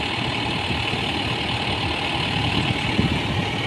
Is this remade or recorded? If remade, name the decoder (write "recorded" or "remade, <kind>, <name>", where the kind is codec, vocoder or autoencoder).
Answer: recorded